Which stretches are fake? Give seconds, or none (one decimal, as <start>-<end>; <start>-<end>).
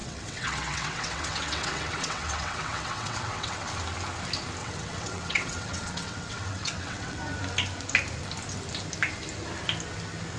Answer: 0.0-3.7; 4.6-7.2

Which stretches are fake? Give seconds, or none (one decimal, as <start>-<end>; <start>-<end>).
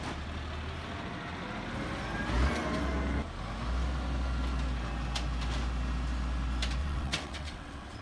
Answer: 6.8-8.0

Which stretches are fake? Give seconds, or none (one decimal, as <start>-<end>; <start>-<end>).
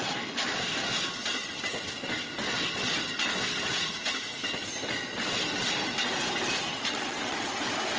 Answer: 6.7-7.4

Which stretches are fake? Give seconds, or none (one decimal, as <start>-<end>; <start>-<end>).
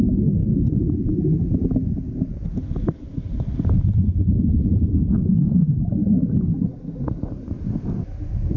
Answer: none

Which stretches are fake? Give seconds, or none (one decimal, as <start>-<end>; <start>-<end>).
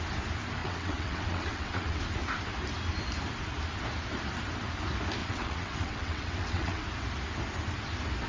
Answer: 0.6-2.0; 5.2-6.8